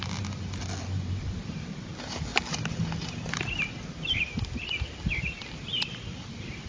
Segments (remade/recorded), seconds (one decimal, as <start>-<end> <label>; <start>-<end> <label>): 0.0-6.7 recorded